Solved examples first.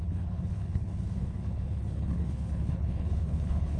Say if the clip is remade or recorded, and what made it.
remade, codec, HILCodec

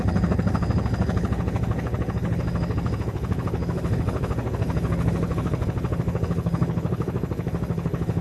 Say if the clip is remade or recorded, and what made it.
remade, codec, HILCodec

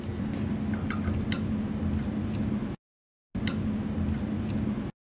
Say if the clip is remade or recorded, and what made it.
recorded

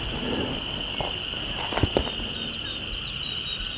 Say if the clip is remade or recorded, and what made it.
recorded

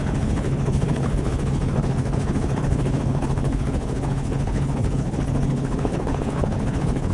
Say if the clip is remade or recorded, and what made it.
remade, codec, HILCodec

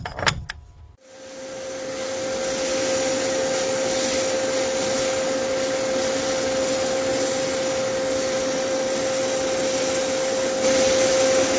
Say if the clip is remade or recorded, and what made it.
recorded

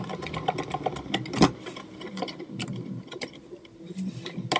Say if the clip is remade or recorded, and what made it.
recorded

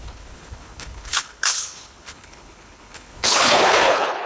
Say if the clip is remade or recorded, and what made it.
remade, codec, HILCodec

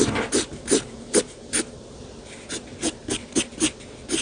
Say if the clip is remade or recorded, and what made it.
recorded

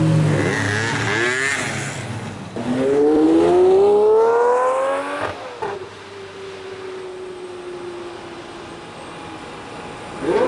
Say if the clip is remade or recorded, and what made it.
recorded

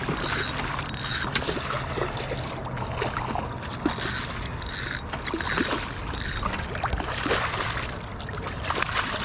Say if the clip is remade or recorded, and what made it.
recorded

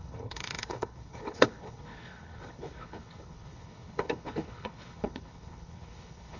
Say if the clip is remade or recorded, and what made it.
remade, codec, HILCodec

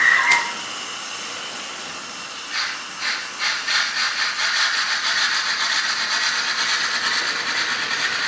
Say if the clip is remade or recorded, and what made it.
recorded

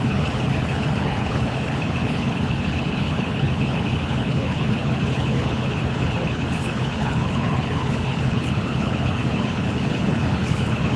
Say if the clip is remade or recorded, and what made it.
remade, codec, HILCodec